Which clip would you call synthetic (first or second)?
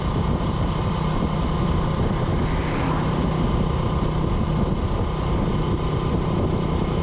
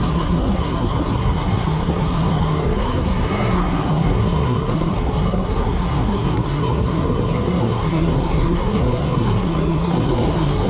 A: second